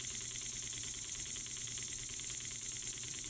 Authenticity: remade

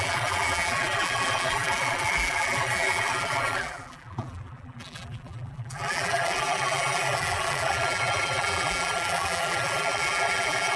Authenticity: remade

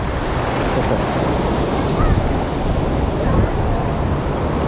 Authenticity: recorded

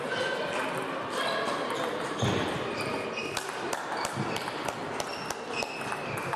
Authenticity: recorded